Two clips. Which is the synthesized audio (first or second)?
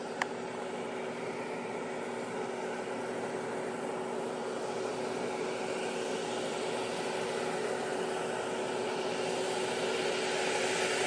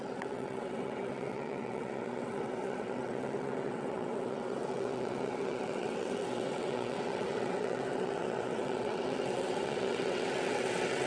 second